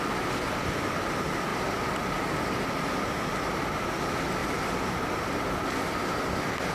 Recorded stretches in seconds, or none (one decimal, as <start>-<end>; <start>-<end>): 0.0-6.7